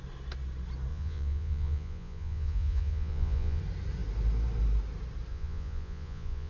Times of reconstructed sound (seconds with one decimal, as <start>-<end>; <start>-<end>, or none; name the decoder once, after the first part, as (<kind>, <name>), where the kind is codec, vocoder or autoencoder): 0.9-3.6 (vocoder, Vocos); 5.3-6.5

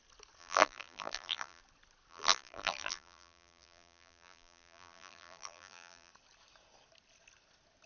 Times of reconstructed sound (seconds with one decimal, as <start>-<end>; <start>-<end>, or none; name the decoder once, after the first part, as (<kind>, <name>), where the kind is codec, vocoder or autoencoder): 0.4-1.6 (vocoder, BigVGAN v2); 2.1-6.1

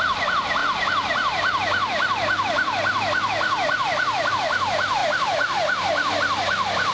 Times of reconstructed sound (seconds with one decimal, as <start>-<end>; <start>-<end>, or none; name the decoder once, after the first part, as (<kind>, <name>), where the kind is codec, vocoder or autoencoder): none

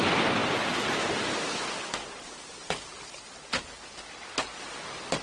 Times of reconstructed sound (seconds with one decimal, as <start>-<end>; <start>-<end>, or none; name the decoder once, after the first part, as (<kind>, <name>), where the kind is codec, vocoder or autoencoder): none

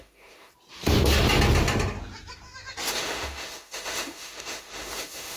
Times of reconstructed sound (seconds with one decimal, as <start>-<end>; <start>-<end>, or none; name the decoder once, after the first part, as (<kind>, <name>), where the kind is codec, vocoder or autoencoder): 0.0-0.5 (autoencoder, DAC-VAE); 2.9-5.4

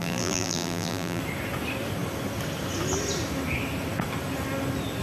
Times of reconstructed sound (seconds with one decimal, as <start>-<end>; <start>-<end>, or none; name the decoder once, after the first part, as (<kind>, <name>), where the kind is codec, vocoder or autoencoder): 0.0-1.2 (vocoder, BigVGAN v2)